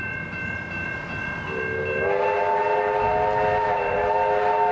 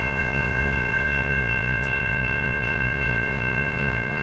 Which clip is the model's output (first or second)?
second